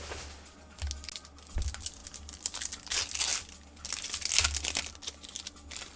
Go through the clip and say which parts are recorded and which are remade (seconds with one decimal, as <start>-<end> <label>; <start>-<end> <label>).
0.0-6.0 recorded